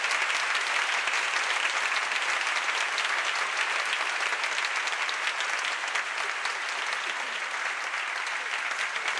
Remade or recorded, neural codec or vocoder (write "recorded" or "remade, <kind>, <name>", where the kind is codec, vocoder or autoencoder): recorded